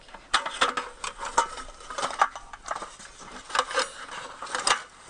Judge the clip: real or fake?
real